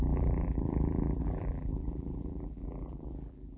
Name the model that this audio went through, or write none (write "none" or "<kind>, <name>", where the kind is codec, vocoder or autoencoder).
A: vocoder, BigVGAN v2